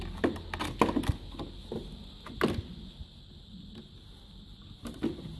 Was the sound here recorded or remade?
recorded